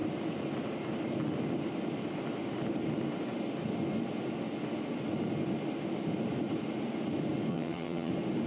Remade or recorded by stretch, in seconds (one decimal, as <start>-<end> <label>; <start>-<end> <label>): 0.0-7.5 recorded; 7.5-8.1 remade; 8.1-8.5 recorded